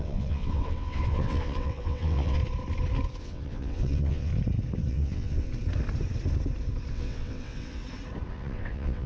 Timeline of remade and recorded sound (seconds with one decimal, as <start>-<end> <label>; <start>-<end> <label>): 0.0-2.4 remade; 2.4-3.2 recorded; 3.2-4.3 remade; 4.3-4.9 recorded; 4.9-5.5 remade; 5.5-6.9 recorded; 6.9-7.8 remade; 7.8-8.3 recorded; 8.3-9.1 remade